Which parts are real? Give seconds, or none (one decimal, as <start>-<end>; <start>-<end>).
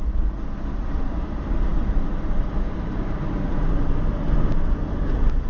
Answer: 0.0-5.5